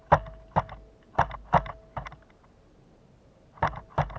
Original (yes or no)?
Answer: yes